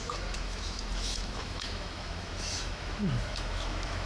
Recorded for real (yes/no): no